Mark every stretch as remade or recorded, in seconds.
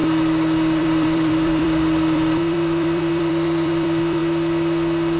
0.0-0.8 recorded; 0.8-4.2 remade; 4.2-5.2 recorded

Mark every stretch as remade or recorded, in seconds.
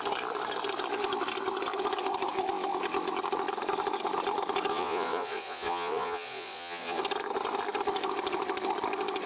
0.0-4.7 recorded; 4.7-7.0 remade; 7.0-9.3 recorded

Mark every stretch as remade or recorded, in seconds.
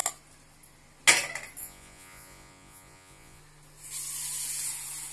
0.0-1.6 recorded; 1.6-3.4 remade; 3.4-5.1 recorded